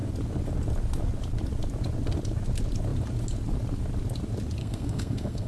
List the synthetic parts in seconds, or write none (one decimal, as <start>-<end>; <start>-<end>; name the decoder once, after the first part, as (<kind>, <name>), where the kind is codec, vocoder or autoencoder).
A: 4.6-5.5 (codec, SNAC)